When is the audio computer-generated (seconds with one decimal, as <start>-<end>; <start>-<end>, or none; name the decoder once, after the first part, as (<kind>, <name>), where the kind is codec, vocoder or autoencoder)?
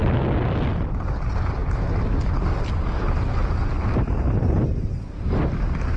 none